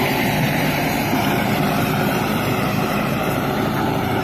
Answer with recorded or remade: remade